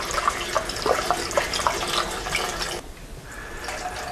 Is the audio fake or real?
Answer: real